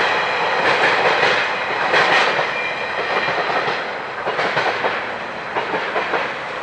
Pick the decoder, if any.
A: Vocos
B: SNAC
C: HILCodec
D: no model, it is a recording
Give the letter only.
D